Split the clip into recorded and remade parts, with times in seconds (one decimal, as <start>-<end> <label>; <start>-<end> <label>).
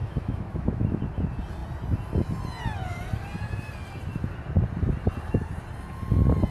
0.0-1.0 remade; 1.0-6.5 recorded